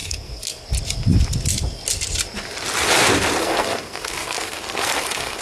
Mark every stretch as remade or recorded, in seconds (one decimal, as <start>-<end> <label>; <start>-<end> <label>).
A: 0.0-0.7 remade; 0.7-3.4 recorded; 3.4-5.4 remade